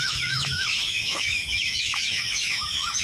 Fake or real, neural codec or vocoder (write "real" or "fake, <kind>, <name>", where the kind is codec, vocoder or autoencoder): fake, autoencoder, DAC-VAE